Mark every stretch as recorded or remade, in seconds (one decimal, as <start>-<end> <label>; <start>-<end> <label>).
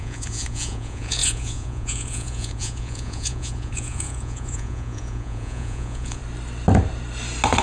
0.0-6.2 remade; 6.2-7.6 recorded